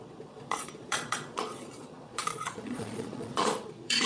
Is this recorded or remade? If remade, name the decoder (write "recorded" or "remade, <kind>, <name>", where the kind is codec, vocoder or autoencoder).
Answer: remade, vocoder, Vocos